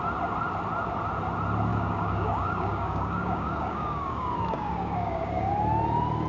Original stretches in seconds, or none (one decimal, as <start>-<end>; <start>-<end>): 0.0-1.7; 5.5-6.3